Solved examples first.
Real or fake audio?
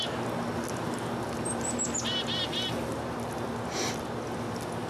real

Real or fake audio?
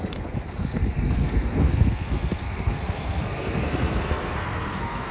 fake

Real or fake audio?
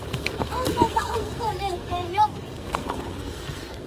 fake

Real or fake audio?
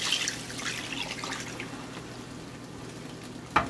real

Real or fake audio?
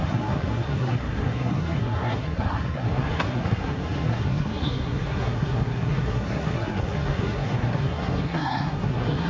fake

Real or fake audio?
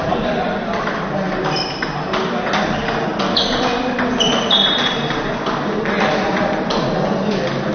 real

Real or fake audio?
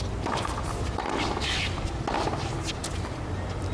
real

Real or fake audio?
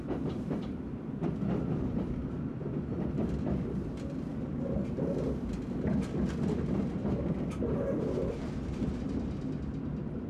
real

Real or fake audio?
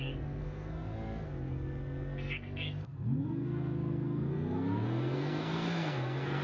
fake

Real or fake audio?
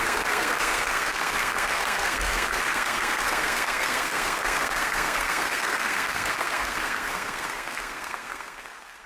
fake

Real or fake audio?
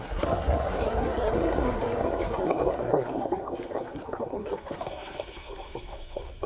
fake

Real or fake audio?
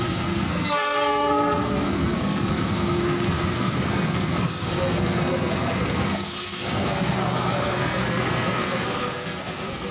fake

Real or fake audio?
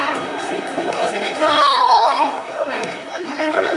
fake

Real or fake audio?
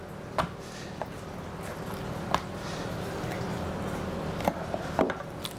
real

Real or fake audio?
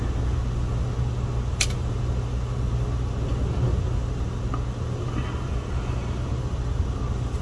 real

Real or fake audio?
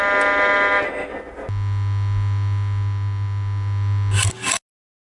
real